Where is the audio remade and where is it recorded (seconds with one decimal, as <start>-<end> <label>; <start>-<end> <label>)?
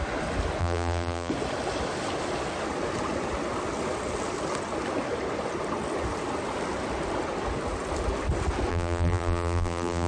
0.0-0.6 recorded; 0.6-1.3 remade; 1.3-8.7 recorded; 8.7-10.1 remade